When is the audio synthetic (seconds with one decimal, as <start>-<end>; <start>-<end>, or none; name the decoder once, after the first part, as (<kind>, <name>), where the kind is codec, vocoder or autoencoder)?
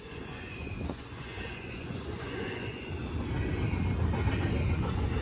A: 0.0-2.9 (vocoder, Vocos); 4.7-5.2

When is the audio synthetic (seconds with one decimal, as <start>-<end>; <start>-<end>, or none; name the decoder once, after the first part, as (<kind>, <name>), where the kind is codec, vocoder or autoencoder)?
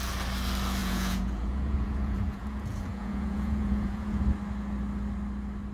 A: 0.8-4.2 (vocoder, Vocos)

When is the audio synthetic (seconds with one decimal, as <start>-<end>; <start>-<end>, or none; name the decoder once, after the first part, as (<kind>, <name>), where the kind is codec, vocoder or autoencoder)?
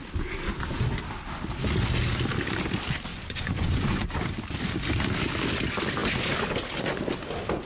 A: 3.1-4.2 (vocoder, Vocos)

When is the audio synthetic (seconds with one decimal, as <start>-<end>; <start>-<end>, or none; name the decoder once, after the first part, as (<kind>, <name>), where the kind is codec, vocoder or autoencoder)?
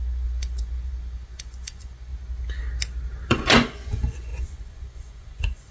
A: 0.0-2.1 (vocoder, Vocos); 3.3-5.7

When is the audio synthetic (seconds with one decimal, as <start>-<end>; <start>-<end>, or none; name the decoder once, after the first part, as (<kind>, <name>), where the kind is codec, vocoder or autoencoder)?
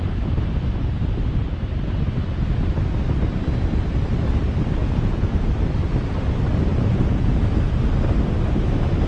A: 4.8-5.4 (vocoder, Vocos); 6.7-7.4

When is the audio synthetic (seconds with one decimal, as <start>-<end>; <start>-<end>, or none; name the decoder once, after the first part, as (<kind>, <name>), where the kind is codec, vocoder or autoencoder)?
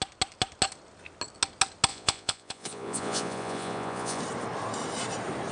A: 1.9-4.2 (vocoder, Vocos)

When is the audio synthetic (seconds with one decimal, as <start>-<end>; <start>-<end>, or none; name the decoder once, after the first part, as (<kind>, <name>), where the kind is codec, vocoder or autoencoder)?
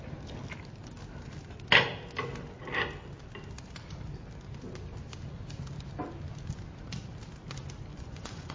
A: 7.9-8.5 (vocoder, Vocos)